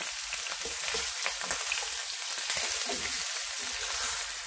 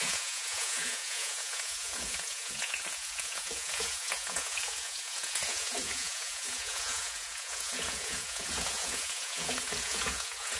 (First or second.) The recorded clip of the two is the first